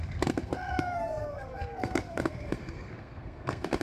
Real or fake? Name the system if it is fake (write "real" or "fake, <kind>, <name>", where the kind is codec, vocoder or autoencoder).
fake, codec, SNAC